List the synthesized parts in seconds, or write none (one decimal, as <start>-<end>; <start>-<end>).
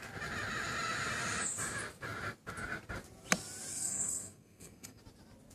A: 3.7-5.0